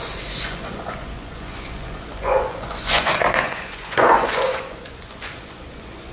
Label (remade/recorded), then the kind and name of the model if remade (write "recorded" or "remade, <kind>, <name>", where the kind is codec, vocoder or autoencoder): remade, vocoder, Vocos